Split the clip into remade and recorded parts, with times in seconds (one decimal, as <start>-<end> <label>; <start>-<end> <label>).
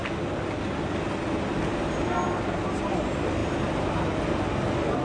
0.0-5.0 recorded